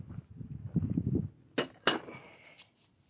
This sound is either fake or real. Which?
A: real